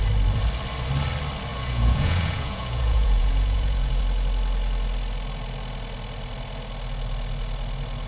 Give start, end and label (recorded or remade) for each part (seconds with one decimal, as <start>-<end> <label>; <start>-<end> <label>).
0.0-1.5 recorded; 1.5-4.0 remade; 4.0-8.1 recorded